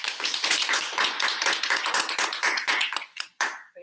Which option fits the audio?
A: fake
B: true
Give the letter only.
A